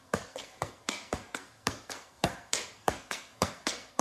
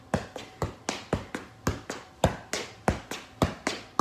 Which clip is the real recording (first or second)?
second